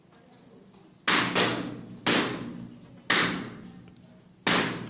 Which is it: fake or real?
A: real